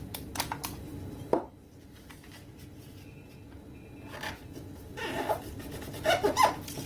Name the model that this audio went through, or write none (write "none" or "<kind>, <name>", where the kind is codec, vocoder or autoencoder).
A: none